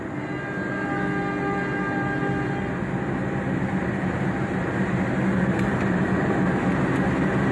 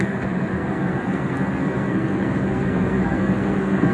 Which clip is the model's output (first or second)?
second